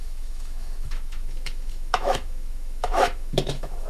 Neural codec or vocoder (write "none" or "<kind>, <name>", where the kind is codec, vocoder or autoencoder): autoencoder, DAC-VAE